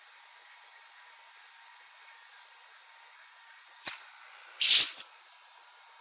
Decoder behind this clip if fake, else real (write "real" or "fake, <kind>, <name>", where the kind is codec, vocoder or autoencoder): real